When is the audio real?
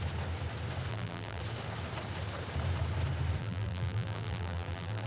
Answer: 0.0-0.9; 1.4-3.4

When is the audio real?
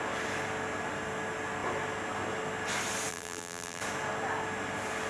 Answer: 0.0-3.1; 3.8-5.1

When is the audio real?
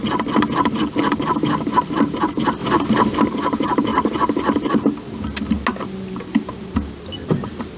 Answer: 0.0-1.1; 2.6-3.2; 3.9-7.8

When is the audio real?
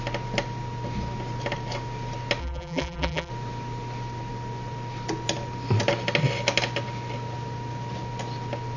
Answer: 0.0-2.4; 3.3-8.8